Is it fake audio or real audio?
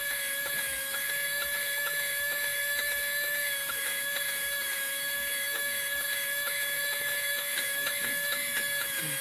fake